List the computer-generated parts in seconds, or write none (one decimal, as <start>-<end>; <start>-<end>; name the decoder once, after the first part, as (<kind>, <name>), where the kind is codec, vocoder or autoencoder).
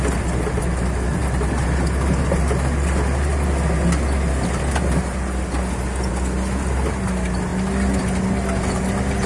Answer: none